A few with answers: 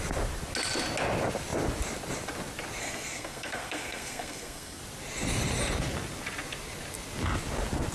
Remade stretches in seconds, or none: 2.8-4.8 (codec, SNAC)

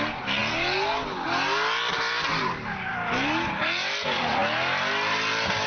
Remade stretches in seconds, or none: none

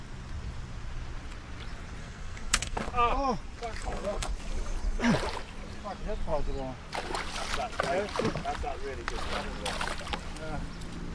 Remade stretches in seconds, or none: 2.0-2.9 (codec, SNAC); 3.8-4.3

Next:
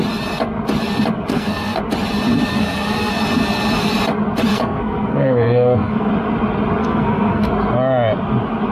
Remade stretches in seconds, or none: 1.3-1.8 (codec, SNAC); 2.5-3.1; 4.5-6.1; 6.8-7.5

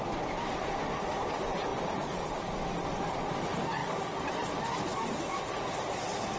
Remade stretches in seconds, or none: none

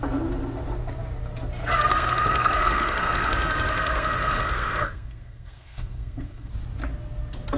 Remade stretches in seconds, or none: 1.9-6.5 (codec, SNAC)

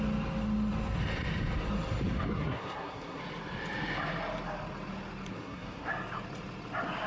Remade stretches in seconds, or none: 2.3-3.2 (codec, SNAC); 5.3-5.9

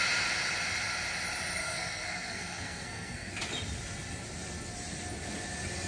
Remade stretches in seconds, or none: 1.6-3.3 (codec, SNAC)